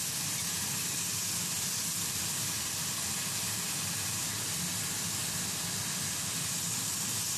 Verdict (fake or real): real